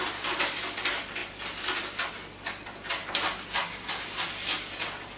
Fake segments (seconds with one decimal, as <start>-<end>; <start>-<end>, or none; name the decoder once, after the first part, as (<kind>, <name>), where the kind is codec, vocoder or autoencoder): none